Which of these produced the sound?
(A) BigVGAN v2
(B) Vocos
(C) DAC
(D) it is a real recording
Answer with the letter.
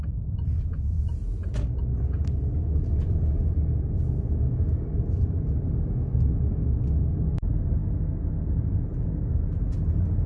D